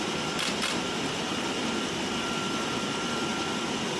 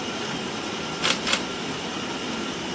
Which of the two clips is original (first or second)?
second